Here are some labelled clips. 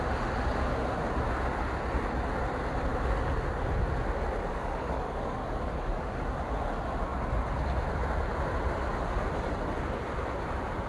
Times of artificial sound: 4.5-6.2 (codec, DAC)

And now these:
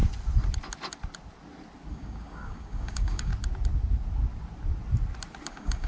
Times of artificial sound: 1.9-3.3 (codec, DAC); 5.5-5.9

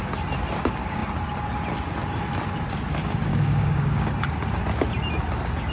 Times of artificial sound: 3.3-4.1 (codec, DAC)

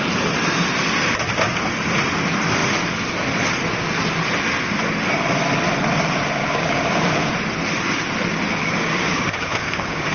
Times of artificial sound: 6.4-7.3 (codec, DAC); 8.6-10.1

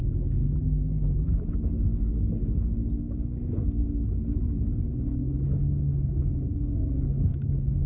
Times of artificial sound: 0.4-1.5 (codec, DAC); 1.9-3.8; 5.9-6.8; 7.3-7.9

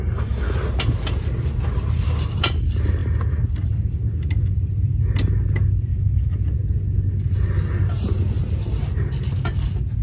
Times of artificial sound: 0.0-0.5 (codec, DAC); 5.9-6.4